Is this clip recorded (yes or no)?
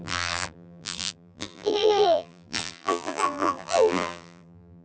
no